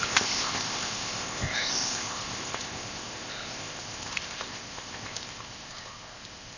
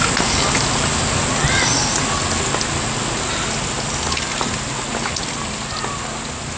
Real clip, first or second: second